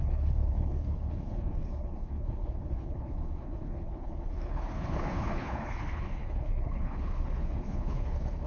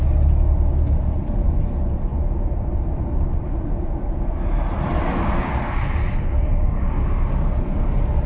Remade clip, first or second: first